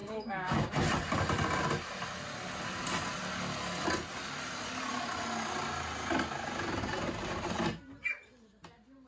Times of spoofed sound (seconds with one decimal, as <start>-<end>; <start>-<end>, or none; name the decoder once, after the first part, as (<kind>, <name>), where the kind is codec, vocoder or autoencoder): 0.0-0.7 (codec, DAC)